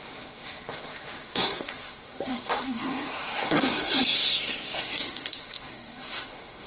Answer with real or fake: fake